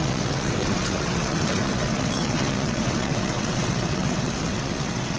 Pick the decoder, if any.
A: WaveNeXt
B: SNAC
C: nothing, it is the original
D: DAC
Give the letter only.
A